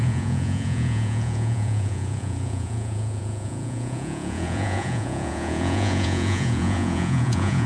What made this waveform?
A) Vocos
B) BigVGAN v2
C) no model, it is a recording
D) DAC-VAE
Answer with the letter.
A